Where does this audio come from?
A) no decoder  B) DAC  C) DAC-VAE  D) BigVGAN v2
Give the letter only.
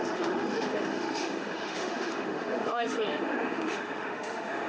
C